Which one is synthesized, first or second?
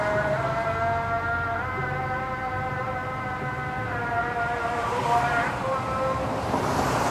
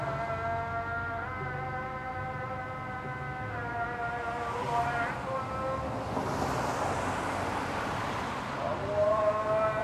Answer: first